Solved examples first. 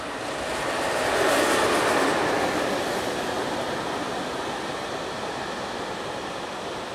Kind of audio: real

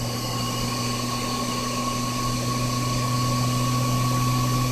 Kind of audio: real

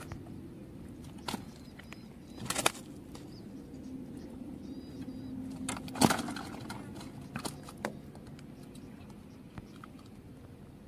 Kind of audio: real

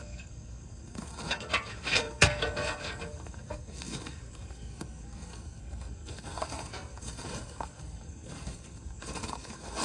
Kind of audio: fake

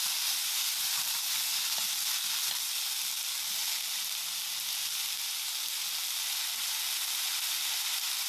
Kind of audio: real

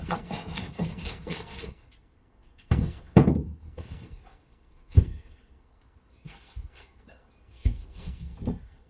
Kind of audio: fake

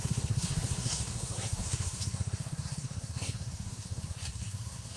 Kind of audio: fake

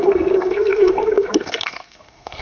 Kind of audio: fake